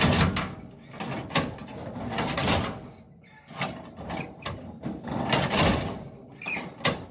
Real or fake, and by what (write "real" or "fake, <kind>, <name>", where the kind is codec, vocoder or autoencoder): real